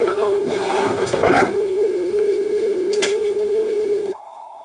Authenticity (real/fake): fake